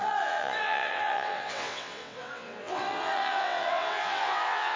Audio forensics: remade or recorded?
remade